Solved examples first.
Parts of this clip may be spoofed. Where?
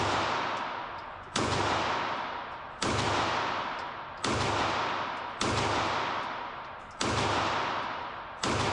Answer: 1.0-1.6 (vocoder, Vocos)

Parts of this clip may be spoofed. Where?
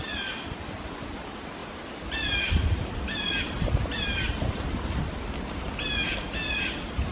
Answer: none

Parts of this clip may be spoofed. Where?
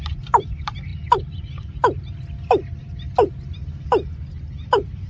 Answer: none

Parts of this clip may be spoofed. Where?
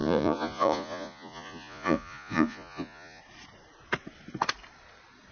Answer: 0.0-3.2 (vocoder, Vocos)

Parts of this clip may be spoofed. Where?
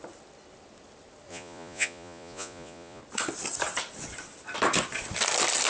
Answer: 1.3-3.0 (vocoder, Vocos)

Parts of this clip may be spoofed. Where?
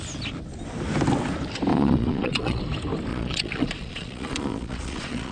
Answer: 1.7-2.6 (vocoder, Vocos); 3.1-5.3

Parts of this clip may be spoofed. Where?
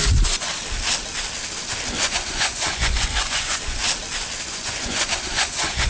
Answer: 0.0-0.5 (vocoder, Vocos); 2.0-3.8; 4.4-5.9